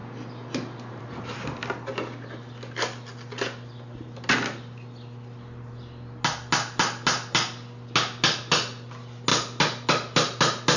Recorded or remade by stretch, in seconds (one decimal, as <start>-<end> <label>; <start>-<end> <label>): 0.0-10.8 recorded